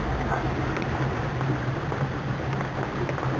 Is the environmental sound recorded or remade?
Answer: recorded